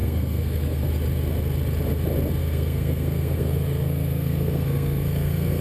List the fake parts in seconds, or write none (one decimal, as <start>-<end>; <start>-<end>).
0.0-0.9; 2.4-5.6